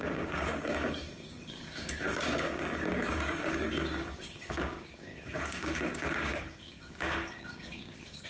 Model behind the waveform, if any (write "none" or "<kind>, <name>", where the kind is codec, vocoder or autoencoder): codec, DAC